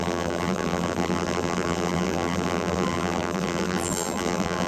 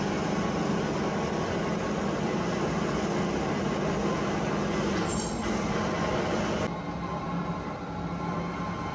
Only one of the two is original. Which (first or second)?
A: second